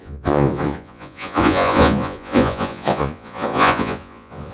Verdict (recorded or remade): remade